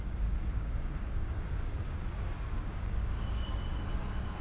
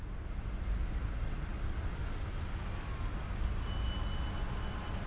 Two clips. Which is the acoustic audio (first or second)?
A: second